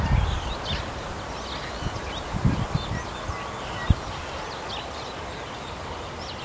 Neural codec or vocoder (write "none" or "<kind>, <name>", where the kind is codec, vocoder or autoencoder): none